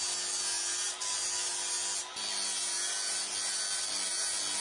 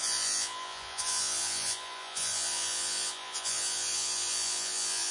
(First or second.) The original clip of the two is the first